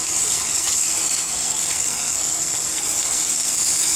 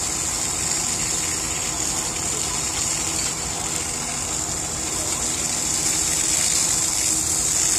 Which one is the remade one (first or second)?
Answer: first